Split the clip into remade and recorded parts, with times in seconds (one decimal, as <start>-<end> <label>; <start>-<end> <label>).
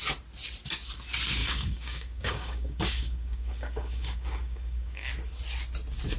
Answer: 0.0-1.4 recorded; 1.4-5.1 remade; 5.1-6.2 recorded